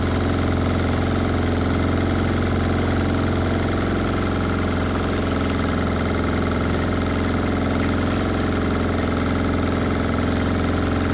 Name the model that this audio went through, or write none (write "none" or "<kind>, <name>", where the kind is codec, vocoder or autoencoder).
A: none